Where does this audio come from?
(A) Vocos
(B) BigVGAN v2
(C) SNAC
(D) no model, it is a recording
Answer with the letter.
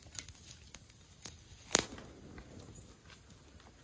D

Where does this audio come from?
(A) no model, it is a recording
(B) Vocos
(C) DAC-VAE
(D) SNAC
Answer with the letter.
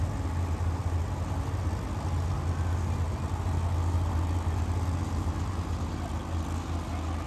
A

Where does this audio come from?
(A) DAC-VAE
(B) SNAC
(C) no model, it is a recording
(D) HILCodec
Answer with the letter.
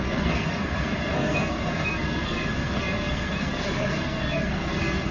B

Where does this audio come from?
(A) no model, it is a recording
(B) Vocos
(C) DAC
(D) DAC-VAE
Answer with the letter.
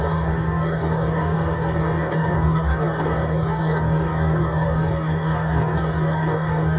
C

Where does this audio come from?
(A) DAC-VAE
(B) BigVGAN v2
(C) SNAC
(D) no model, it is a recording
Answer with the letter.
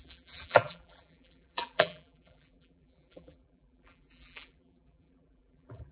B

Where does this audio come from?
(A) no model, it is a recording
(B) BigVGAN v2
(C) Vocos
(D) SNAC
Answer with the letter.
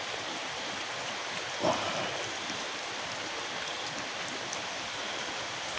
A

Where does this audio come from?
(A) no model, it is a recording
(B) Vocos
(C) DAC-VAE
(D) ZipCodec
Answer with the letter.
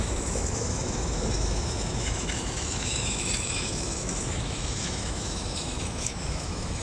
C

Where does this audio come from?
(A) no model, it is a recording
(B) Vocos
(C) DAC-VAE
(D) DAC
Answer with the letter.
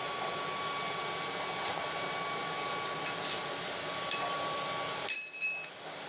A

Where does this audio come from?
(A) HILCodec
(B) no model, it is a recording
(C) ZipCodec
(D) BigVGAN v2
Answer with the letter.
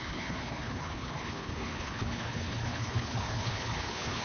A